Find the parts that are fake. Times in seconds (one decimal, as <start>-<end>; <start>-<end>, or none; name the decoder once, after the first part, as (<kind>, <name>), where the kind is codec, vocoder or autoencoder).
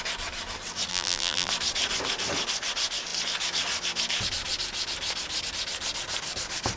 0.9-1.5 (vocoder, BigVGAN v2)